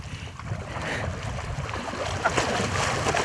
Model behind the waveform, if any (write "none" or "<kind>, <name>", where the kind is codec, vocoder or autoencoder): none